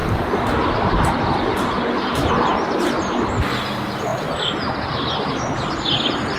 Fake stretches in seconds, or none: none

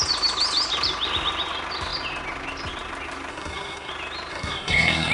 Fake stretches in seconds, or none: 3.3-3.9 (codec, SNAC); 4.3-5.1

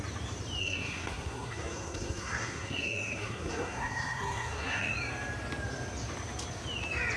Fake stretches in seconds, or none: 0.6-4.9 (codec, SNAC)

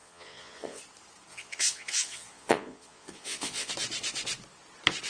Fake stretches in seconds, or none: 0.0-0.8 (vocoder, Vocos); 1.3-3.7

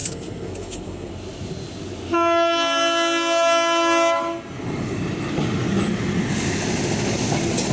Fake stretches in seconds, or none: 0.0-1.1 (codec, SNAC)

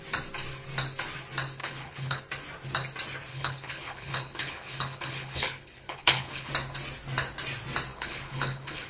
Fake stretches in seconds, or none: 1.6-2.2 (codec, HILCodec); 3.3-6.5; 7.9-8.9

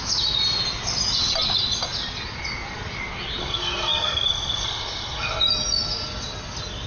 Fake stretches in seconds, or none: 3.4-5.4 (codec, SNAC)

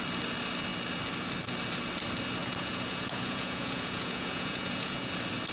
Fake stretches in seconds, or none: 2.4-5.1 (vocoder, Vocos)